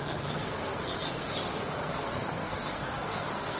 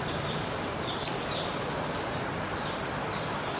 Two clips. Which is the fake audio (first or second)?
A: first